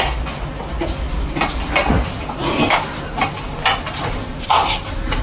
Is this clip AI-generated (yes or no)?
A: no